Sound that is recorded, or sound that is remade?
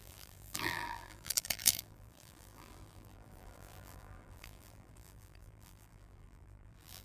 remade